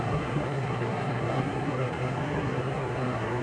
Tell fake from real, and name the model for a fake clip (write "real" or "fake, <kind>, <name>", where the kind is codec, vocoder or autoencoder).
fake, codec, SNAC